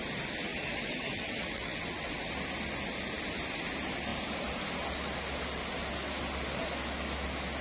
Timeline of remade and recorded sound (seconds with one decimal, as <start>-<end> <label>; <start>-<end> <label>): 0.0-0.5 recorded; 0.5-2.3 remade; 2.3-7.6 recorded